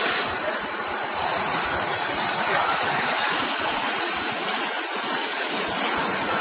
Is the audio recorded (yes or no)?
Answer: no